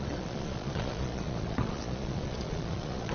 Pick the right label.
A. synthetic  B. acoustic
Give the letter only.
A